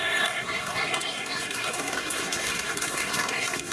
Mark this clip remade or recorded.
remade